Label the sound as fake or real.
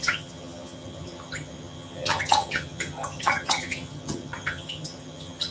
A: fake